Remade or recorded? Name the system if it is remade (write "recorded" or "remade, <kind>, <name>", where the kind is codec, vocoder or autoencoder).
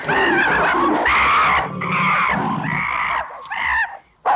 recorded